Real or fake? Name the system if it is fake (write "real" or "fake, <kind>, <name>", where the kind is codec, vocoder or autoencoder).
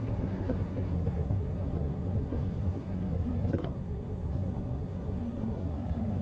fake, codec, SNAC